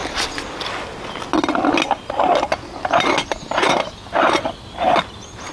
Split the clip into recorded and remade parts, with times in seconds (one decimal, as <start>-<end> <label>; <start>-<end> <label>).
0.0-5.5 recorded